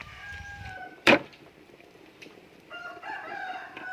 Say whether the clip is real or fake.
fake